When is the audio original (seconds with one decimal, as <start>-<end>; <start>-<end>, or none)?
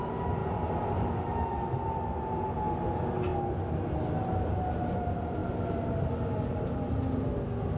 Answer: 0.0-7.8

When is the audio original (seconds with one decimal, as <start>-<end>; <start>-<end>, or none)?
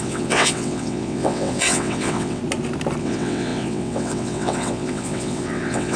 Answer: 2.4-3.0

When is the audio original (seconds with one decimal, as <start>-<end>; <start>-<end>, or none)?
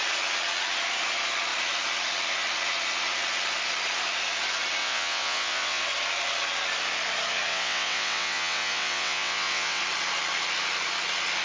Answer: 0.0-4.8; 5.8-7.5; 9.8-11.4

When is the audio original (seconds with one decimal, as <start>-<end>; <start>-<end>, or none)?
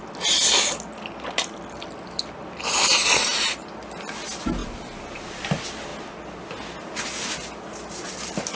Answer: 0.0-8.6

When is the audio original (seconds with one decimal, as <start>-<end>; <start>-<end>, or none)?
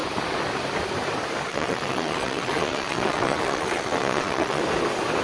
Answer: 0.0-1.5; 4.6-5.2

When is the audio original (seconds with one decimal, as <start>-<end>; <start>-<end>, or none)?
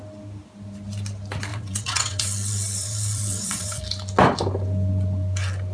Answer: 0.0-1.5; 3.8-5.7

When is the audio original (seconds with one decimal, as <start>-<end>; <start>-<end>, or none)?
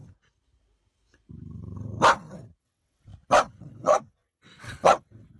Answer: 0.0-2.6; 3.1-3.6